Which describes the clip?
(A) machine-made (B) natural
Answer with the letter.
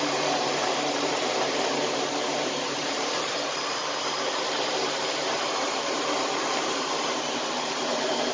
A